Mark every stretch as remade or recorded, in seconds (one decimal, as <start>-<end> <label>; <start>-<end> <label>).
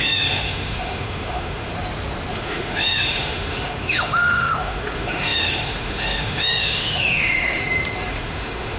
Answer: 0.0-1.7 remade; 1.7-2.3 recorded; 2.3-7.6 remade; 7.6-8.1 recorded; 8.1-8.8 remade